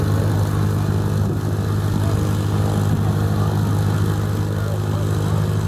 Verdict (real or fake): real